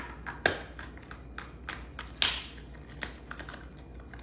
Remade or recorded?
recorded